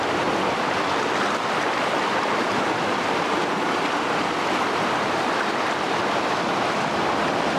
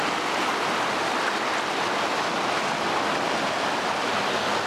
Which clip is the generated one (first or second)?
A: first